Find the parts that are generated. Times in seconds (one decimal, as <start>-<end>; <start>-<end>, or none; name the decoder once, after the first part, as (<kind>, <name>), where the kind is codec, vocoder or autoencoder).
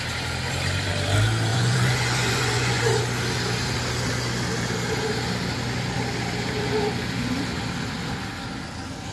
1.5-2.8 (vocoder, Vocos)